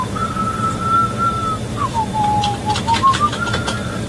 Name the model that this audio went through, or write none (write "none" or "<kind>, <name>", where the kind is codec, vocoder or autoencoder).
none